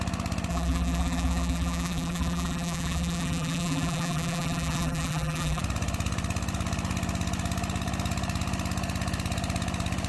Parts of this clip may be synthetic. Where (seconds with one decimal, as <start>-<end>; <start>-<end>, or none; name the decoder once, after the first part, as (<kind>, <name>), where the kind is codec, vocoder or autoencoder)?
0.5-5.6 (vocoder, BigVGAN v2)